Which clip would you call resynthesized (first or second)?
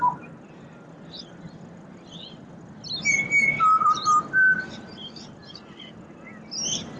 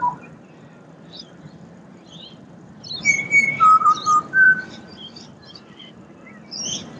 second